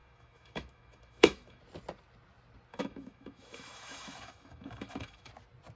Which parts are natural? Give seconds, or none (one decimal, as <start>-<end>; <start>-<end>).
1.6-2.7; 5.3-5.8